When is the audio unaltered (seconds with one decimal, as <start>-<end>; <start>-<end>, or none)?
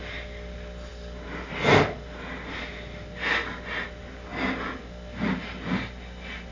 0.0-6.5